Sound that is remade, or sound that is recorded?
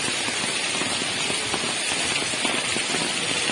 recorded